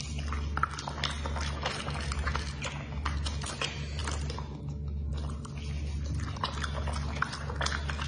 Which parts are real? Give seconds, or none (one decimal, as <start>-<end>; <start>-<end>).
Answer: 0.0-8.1